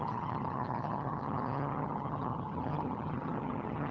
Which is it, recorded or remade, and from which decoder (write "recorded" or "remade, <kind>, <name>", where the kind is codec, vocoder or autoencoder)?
remade, vocoder, HiFi-GAN